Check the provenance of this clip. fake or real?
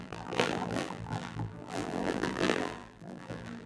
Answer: fake